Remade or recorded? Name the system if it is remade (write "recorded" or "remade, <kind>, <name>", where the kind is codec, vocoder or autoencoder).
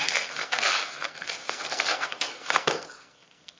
remade, codec, SNAC